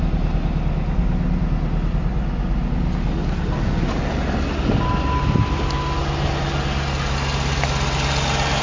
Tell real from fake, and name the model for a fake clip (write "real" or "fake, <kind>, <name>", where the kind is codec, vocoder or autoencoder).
real